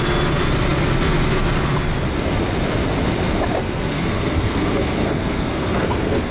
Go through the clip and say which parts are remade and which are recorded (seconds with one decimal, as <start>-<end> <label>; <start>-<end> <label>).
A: 0.0-3.6 recorded; 3.6-6.3 remade